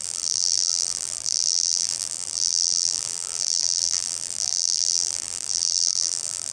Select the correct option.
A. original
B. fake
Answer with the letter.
B